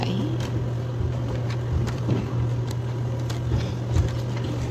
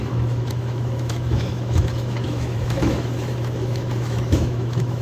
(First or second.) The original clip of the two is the first